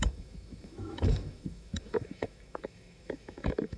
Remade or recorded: remade